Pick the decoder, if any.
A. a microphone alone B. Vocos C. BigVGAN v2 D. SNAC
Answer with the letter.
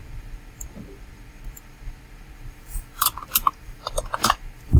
C